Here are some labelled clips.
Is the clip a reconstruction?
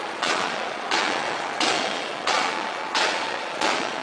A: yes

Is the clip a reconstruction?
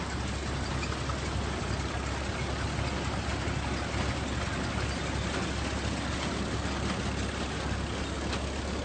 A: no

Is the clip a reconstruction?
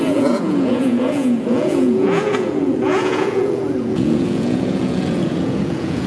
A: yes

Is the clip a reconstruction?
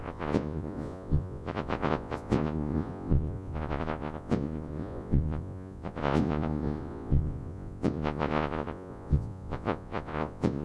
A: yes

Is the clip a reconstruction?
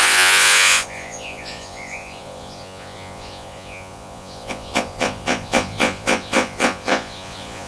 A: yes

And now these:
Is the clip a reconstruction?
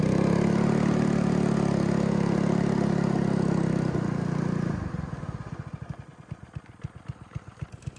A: no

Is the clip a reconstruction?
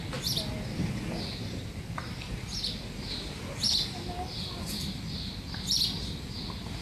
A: no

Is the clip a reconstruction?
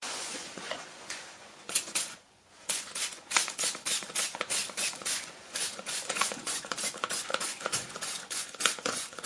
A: yes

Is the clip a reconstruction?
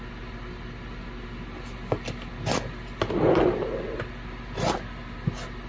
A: no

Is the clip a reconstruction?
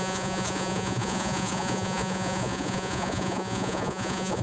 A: yes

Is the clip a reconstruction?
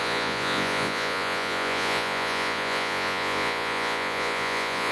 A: yes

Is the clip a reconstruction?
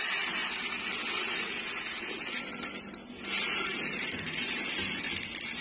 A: no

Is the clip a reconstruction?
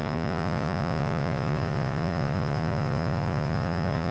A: yes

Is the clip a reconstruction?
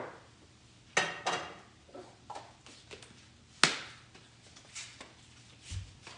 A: no